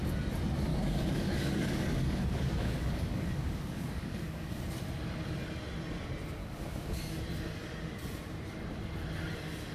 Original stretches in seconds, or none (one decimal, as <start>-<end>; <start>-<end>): 0.0-0.7; 4.6-6.4; 7.0-9.7